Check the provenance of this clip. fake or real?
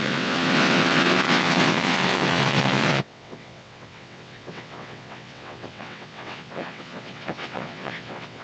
fake